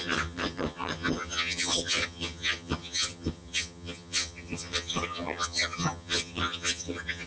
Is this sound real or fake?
fake